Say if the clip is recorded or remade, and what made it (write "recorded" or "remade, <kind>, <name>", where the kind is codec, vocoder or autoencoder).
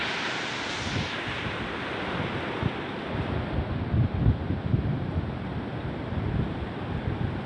remade, vocoder, BigVGAN v2